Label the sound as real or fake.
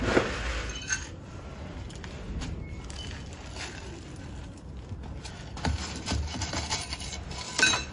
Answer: real